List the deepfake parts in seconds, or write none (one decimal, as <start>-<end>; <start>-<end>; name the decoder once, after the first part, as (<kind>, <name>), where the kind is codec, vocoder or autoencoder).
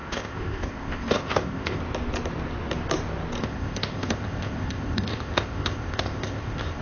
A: 0.0-1.8 (codec, ZipCodec); 3.4-6.8